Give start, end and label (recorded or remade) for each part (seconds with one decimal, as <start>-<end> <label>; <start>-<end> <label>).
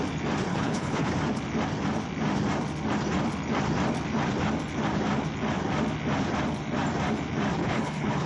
0.0-0.5 recorded; 0.5-1.1 remade; 1.1-7.6 recorded; 7.6-8.3 remade